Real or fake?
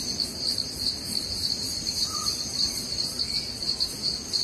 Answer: real